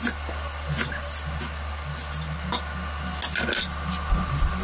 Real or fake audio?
real